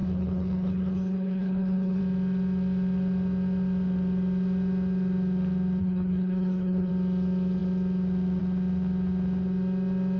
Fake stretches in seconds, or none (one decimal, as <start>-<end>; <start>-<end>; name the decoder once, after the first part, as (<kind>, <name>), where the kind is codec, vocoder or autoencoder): 0.0-2.0 (codec, HILCodec); 5.8-6.9